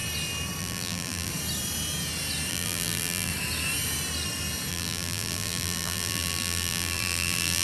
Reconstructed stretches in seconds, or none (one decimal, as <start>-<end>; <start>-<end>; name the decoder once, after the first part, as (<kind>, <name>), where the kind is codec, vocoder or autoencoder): 0.6-1.3 (vocoder, BigVGAN v2); 2.5-3.3; 4.7-7.6